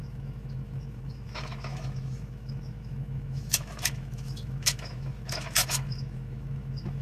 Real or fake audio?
fake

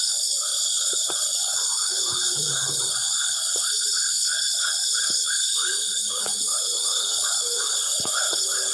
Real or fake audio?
fake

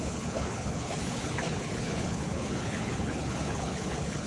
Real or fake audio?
fake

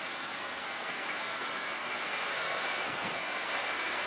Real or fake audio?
fake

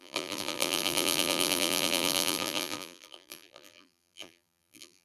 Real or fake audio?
fake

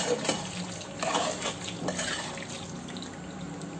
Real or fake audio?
real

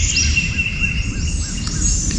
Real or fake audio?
real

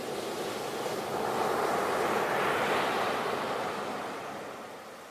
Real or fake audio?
real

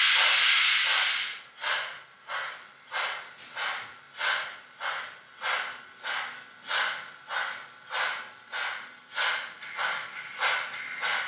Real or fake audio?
real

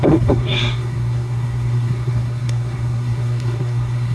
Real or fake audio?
fake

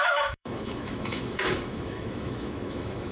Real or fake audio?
fake